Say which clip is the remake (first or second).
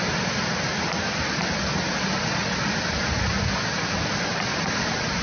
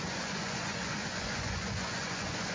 second